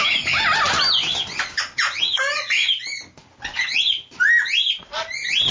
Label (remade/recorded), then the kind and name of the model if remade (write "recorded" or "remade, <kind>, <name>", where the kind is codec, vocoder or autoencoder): recorded